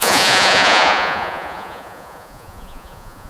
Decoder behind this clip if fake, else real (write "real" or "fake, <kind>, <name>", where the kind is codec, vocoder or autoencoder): fake, vocoder, Vocos